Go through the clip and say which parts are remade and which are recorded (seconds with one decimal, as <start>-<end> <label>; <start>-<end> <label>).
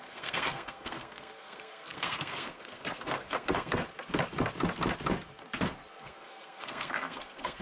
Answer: 0.0-3.8 remade; 3.8-6.0 recorded; 6.0-7.6 remade